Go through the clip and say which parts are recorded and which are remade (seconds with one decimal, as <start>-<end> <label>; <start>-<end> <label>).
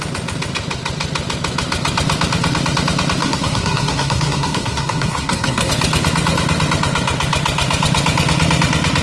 0.0-3.2 recorded; 3.2-5.7 remade; 5.7-9.0 recorded